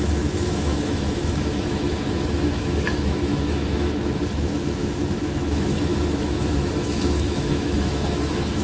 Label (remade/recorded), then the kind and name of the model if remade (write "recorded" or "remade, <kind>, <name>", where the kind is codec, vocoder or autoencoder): remade, autoencoder, DAC-VAE